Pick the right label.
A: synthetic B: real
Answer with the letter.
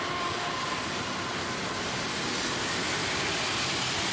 B